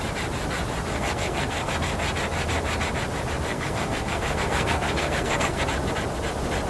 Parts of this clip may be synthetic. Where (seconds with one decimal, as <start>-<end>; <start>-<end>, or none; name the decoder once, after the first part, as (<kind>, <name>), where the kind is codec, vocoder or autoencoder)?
0.9-1.7 (codec, SNAC); 3.5-5.6